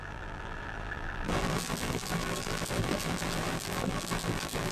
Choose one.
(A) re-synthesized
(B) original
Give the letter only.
A